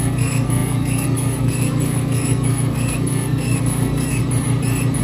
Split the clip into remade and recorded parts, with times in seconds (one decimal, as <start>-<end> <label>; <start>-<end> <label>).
0.0-4.2 remade; 4.2-5.0 recorded